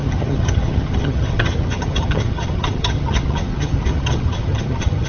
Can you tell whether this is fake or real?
fake